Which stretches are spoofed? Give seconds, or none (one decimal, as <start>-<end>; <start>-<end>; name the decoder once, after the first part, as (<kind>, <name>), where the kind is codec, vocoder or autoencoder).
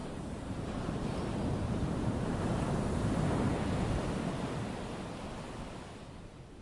0.0-2.6 (vocoder, BigVGAN v2)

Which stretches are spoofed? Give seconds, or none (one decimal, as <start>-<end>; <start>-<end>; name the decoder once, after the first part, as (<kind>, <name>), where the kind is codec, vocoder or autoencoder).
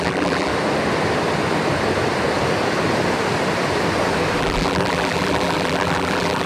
0.0-0.5 (vocoder, BigVGAN v2); 4.4-6.5